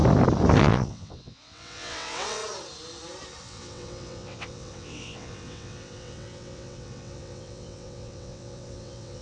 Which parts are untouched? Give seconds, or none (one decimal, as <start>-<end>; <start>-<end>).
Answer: 0.0-0.6; 2.4-3.4